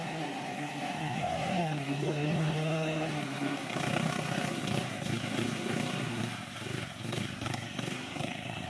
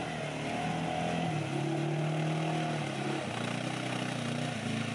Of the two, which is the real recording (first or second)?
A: second